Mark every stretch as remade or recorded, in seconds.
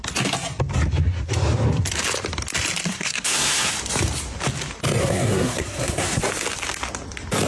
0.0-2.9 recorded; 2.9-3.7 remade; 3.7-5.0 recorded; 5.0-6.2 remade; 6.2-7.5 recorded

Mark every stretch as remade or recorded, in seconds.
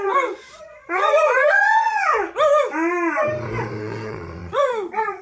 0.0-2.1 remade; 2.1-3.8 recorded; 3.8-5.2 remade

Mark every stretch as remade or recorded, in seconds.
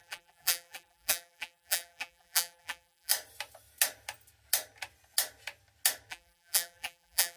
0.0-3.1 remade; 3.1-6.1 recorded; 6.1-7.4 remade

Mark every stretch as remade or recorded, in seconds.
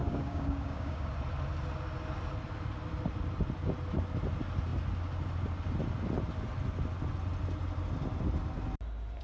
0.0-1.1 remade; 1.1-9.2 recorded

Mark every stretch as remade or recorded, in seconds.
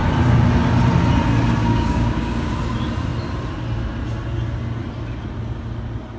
0.0-1.6 recorded; 1.6-2.5 remade; 2.5-6.2 recorded